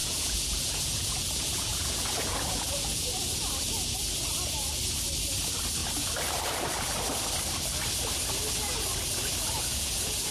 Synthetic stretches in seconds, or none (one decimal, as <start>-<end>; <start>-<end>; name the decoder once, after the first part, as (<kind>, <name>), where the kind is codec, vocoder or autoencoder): 0.0-3.1 (vocoder, Vocos); 9.7-10.3

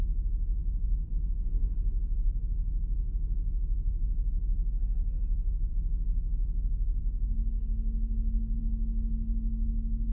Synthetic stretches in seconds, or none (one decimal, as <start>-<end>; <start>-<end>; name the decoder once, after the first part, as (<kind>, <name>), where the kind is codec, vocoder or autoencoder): 7.0-8.6 (codec, DAC)